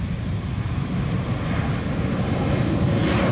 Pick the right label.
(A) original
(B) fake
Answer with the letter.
A